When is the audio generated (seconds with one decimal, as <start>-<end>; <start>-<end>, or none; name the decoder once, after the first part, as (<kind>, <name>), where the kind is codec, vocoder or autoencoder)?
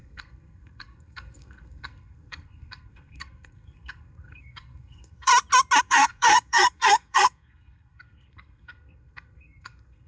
0.0-5.3 (codec, SNAC); 5.8-10.1